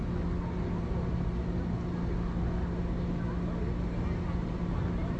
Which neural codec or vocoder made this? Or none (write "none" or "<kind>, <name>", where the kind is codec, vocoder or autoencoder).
none